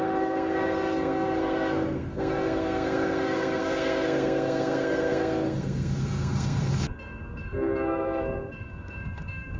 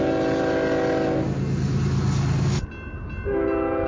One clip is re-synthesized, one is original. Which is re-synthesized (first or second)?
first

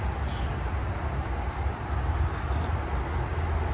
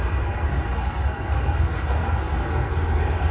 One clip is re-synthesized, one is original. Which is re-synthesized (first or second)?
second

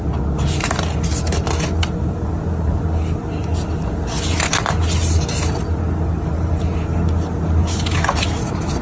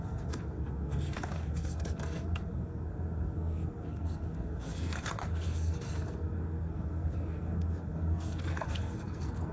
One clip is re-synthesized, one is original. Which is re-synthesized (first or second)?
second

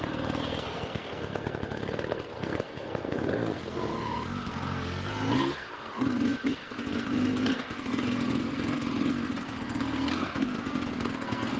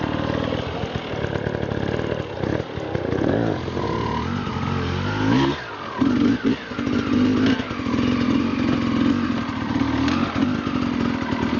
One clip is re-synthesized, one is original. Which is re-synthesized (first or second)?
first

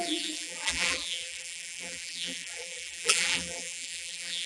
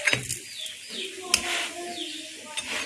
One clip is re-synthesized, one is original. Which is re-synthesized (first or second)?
first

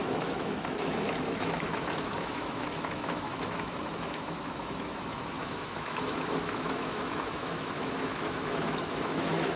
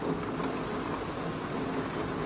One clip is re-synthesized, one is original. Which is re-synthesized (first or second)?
first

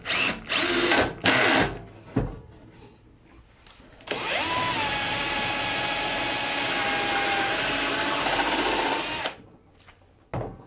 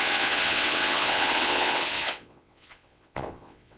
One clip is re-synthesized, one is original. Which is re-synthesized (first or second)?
second